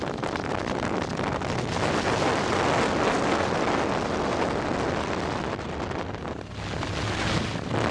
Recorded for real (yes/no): yes